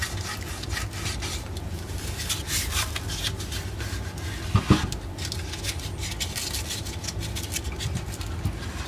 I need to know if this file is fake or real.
real